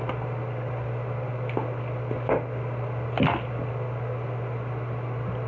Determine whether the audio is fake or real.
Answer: real